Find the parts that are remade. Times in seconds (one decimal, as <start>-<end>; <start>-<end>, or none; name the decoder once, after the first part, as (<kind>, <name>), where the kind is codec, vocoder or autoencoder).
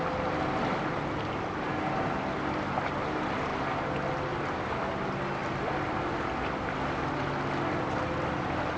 5.4-6.0 (vocoder, BigVGAN v2)